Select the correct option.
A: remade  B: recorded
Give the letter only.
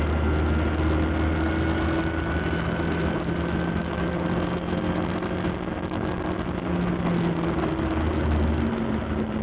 B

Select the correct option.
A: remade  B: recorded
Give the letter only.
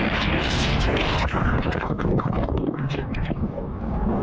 A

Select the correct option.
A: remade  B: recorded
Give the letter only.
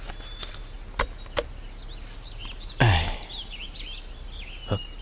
B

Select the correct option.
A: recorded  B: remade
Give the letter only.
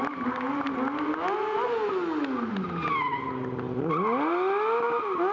A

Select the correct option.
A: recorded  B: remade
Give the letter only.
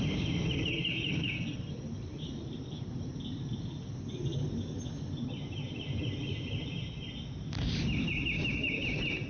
A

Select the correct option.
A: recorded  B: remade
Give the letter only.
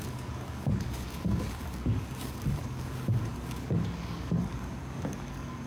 B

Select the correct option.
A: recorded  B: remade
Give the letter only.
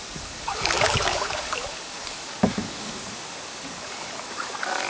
B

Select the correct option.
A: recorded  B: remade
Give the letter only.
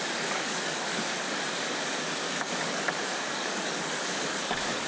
B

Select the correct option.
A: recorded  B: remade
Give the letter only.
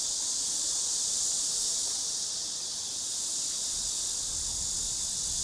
A